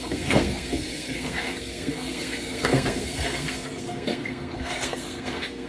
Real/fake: fake